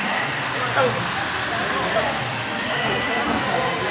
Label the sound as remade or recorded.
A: recorded